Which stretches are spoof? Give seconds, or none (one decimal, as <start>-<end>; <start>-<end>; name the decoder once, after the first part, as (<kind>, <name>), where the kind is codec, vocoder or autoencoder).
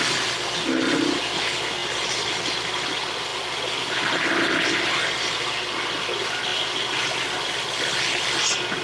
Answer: none